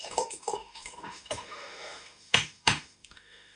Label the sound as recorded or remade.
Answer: remade